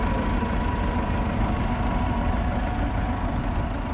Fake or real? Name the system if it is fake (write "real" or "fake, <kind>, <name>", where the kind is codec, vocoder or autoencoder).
real